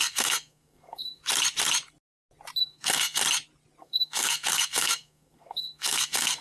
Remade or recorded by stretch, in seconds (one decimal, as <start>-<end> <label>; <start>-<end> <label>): 0.0-1.2 remade; 1.2-2.6 recorded; 2.6-3.2 remade; 3.2-3.8 recorded; 3.8-6.4 remade